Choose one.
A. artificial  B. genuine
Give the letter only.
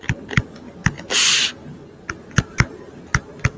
B